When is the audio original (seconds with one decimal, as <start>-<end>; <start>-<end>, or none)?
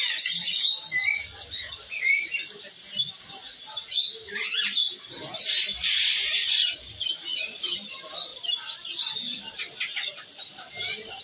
0.0-11.2